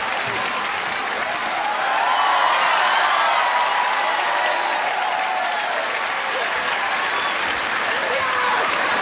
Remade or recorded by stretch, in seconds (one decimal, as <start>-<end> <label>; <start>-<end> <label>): 0.0-9.0 recorded